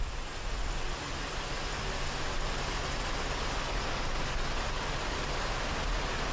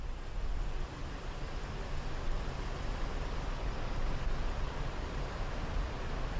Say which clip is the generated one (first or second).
second